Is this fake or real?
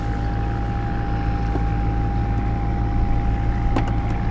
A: real